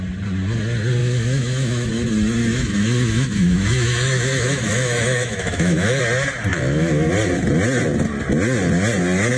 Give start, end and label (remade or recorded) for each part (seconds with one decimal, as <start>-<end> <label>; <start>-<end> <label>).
0.0-1.0 recorded; 1.0-1.9 remade; 1.9-2.4 recorded; 2.4-6.0 remade; 6.0-6.5 recorded; 6.5-7.1 remade; 7.1-9.4 recorded